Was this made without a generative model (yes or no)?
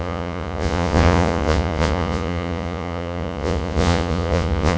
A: no